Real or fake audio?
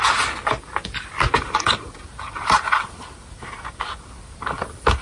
real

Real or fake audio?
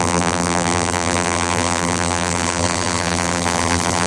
fake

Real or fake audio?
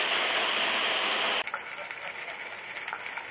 real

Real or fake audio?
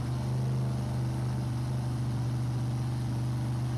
real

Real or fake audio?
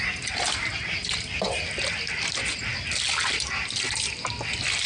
real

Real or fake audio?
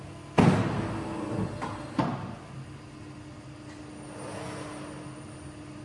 real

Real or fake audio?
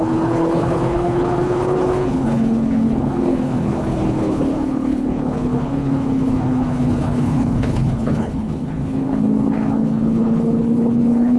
fake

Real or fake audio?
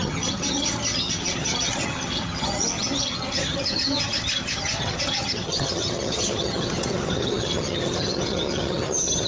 fake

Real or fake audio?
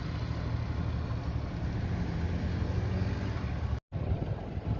real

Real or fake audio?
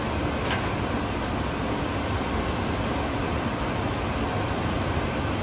real